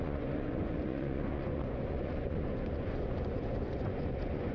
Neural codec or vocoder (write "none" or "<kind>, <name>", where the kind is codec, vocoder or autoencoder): vocoder, Vocos